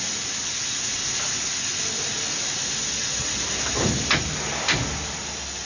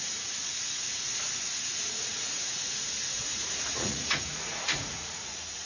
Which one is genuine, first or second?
first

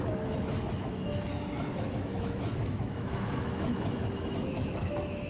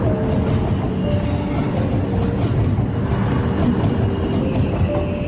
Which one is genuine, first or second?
second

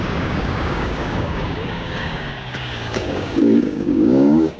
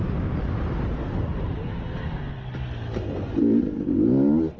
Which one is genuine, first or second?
second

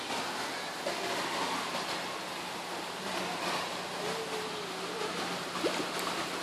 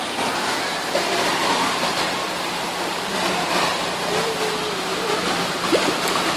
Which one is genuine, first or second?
first